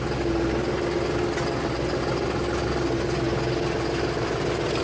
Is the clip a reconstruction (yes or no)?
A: no